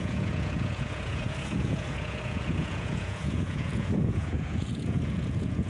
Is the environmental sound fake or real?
fake